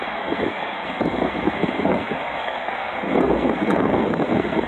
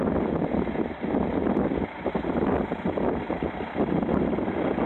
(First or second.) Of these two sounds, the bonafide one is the second